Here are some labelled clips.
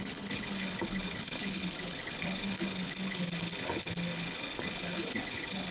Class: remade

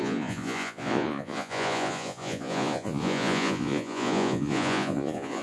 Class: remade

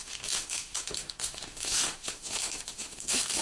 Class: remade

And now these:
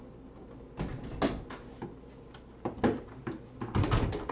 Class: recorded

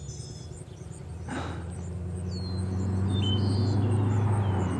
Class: recorded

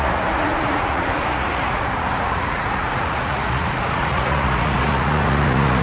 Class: remade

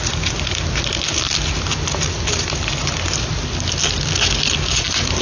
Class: recorded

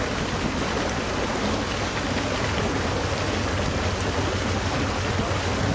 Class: recorded